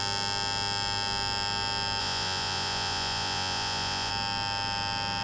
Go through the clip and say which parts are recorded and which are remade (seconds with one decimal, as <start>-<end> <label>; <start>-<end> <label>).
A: 0.0-2.0 recorded; 2.0-4.1 remade; 4.1-5.2 recorded